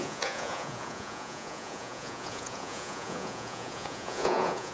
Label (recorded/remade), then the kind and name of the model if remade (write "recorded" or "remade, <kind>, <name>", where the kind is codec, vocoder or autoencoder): remade, vocoder, Vocos